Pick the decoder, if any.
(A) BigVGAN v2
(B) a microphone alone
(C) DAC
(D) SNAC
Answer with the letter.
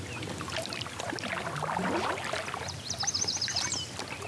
B